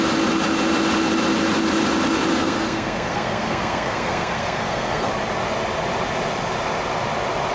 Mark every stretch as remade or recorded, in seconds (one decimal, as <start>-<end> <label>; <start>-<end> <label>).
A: 0.0-2.3 recorded; 2.3-5.1 remade; 5.1-7.5 recorded